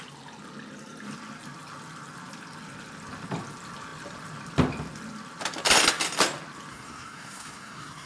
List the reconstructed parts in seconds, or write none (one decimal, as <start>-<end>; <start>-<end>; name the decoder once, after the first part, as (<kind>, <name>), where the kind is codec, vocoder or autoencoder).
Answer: 6.7-8.1 (codec, SNAC)